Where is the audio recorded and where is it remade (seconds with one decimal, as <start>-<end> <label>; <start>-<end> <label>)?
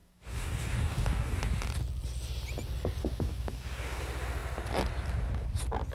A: 0.0-1.4 remade; 1.4-3.0 recorded; 3.0-4.0 remade; 4.0-5.9 recorded